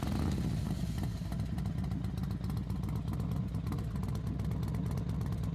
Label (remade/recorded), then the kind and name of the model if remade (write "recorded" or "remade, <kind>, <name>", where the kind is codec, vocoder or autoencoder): recorded